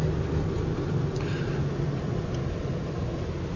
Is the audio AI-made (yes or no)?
no